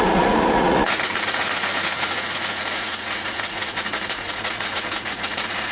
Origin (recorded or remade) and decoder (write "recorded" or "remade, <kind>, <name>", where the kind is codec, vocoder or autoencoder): remade, vocoder, Vocos